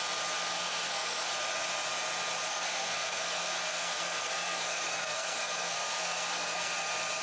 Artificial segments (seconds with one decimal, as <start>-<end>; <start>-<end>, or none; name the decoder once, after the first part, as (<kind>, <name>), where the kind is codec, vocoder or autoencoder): 0.5-1.3 (codec, SNAC); 2.5-6.7